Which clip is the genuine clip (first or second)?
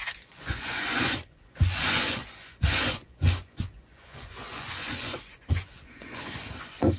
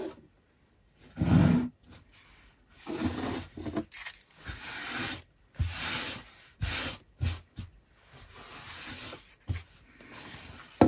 second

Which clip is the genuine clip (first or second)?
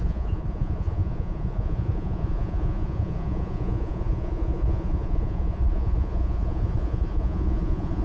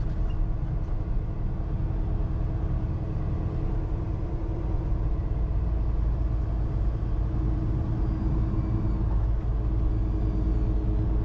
second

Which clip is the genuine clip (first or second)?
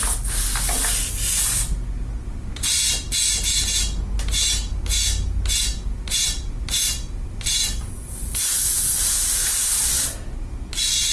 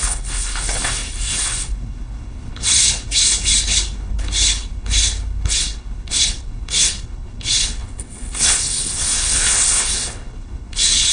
first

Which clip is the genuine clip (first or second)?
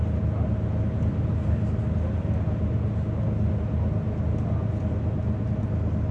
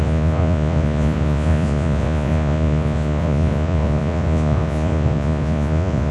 first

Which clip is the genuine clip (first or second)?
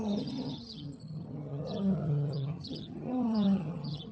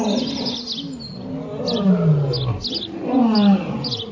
second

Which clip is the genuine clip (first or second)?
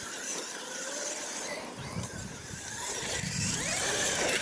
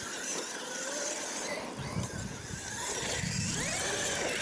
second